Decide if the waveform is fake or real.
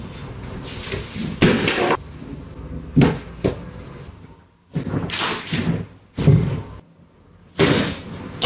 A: real